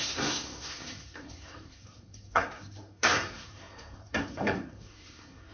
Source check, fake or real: fake